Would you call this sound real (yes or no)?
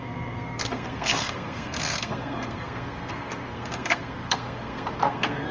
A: no